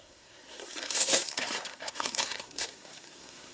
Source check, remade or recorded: remade